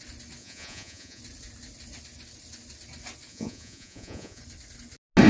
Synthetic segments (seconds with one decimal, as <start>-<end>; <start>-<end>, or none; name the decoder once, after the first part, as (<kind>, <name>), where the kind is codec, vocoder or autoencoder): 0.4-1.2 (vocoder, Vocos); 3.3-4.4